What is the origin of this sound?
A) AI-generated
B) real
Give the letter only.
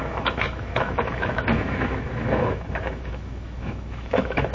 A